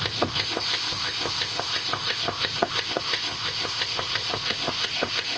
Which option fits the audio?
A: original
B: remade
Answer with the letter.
B